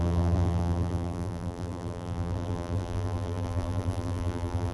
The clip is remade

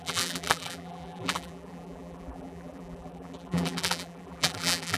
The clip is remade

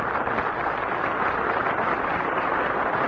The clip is recorded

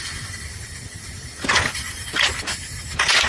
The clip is recorded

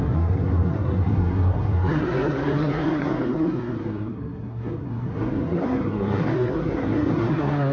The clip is remade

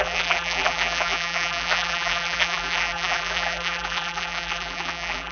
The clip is remade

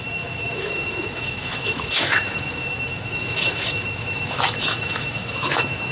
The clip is remade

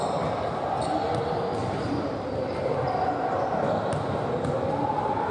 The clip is recorded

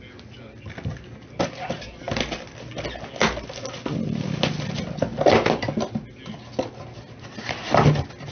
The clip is recorded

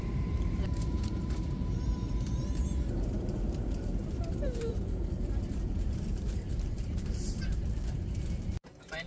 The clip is remade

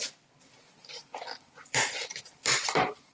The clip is remade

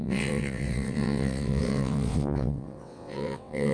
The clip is remade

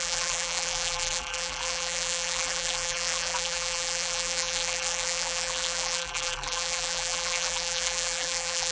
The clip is remade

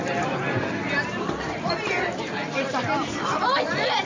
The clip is recorded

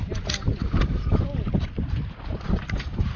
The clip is recorded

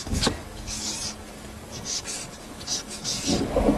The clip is remade